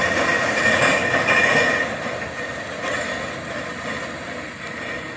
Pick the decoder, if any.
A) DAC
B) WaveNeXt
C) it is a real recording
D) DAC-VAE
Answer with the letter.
C